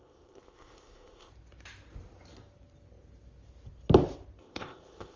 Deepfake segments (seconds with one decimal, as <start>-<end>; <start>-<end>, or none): 0.0-1.3; 4.4-5.2